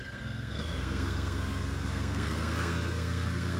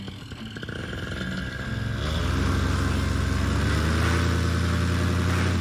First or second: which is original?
second